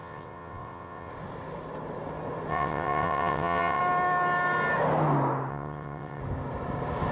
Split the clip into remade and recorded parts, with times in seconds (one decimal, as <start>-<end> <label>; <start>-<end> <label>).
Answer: 0.0-1.1 remade; 1.1-2.5 recorded; 2.5-3.8 remade; 3.8-5.5 recorded; 5.5-6.2 remade; 6.2-7.1 recorded